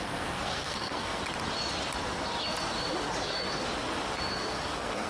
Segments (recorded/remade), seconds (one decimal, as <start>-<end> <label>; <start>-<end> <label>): 0.0-1.2 remade; 1.2-4.3 recorded; 4.3-5.1 remade